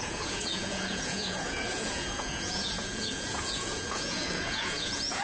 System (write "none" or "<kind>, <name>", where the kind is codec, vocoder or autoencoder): vocoder, Vocos